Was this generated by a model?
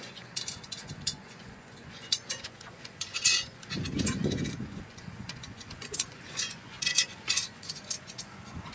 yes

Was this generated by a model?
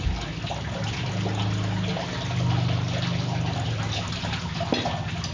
no